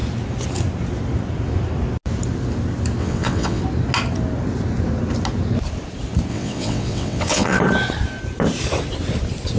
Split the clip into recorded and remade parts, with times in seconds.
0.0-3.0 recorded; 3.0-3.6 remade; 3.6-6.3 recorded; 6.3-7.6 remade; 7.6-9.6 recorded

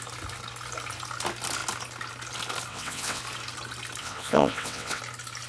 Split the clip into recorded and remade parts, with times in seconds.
0.0-2.7 recorded; 2.7-3.2 remade; 3.2-4.0 recorded; 4.0-5.0 remade; 5.0-5.5 recorded

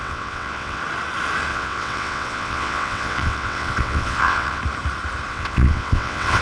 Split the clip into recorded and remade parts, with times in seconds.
0.0-0.8 remade; 0.8-1.5 recorded; 1.5-4.6 remade; 4.6-5.3 recorded; 5.3-6.4 remade

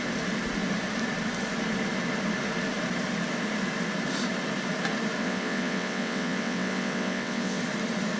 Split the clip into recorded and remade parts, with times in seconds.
0.0-5.2 recorded; 5.2-7.6 remade; 7.6-8.2 recorded

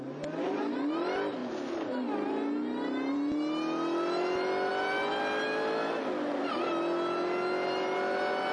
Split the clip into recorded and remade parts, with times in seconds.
0.0-8.5 recorded